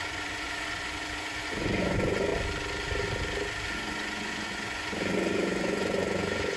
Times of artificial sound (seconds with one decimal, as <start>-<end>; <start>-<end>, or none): 0.0-2.3; 3.8-6.6